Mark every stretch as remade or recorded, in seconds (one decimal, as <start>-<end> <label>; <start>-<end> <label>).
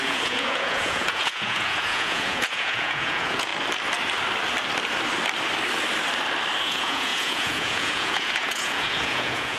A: 0.0-3.5 remade; 3.5-6.6 recorded; 6.6-9.6 remade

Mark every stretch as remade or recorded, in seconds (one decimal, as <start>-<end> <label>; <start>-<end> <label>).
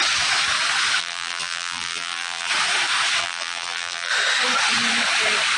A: 0.0-1.0 recorded; 1.0-2.5 remade; 2.5-3.2 recorded; 3.2-4.1 remade; 4.1-5.6 recorded